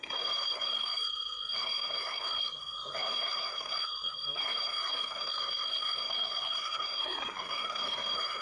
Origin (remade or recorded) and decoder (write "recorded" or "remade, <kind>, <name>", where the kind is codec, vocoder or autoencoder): remade, codec, SNAC